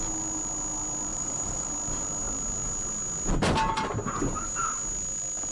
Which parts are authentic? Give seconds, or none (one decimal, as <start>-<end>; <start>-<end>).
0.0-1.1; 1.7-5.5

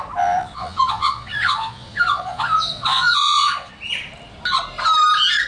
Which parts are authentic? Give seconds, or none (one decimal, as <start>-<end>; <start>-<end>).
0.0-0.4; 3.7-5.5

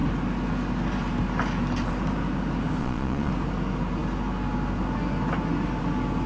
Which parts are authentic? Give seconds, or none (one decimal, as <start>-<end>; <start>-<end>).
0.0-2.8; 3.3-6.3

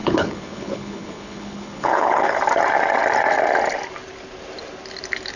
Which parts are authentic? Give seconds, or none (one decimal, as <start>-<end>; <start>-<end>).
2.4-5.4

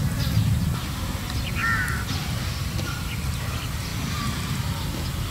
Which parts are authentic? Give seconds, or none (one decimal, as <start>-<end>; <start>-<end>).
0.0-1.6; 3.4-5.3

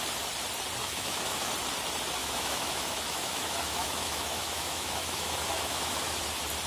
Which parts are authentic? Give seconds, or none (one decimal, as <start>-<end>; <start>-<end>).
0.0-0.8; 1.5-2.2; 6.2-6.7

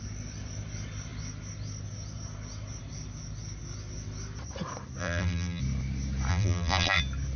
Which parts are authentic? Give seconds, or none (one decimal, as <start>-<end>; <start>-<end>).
0.0-5.0; 5.6-6.3; 7.0-7.4

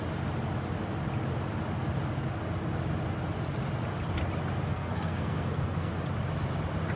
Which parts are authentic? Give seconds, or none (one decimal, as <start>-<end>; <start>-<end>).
0.0-4.7; 5.9-7.0